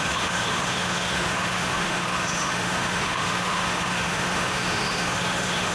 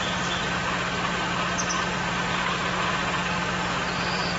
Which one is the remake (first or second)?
first